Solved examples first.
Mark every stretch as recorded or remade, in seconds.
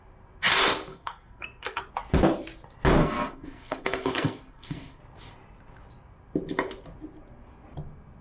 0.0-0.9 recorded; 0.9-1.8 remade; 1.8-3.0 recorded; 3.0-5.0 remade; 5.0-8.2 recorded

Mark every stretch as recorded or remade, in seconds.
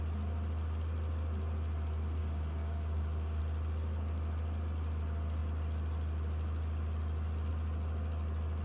0.0-2.2 recorded; 2.2-3.4 remade; 3.4-8.6 recorded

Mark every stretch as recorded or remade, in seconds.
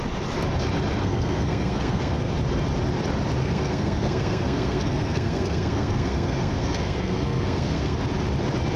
0.0-1.0 recorded; 1.0-2.3 remade; 2.3-3.4 recorded; 3.4-8.0 remade; 8.0-8.8 recorded